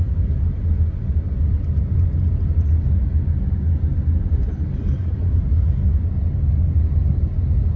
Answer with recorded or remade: recorded